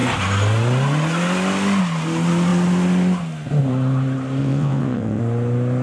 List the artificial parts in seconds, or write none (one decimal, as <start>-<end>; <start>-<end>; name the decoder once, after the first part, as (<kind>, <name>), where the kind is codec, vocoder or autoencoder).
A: 4.4-5.2 (vocoder, WaveNeXt)